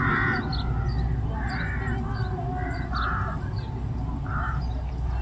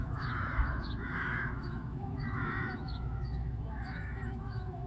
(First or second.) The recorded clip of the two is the first